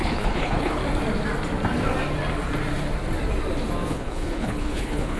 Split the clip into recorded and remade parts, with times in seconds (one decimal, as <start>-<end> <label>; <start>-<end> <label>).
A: 0.0-0.8 remade; 0.8-3.9 recorded; 3.9-5.2 remade